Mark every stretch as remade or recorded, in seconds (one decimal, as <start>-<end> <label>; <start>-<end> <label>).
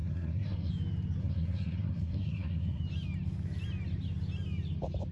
0.0-0.7 remade; 0.7-1.2 recorded; 1.2-2.8 remade; 2.8-5.1 recorded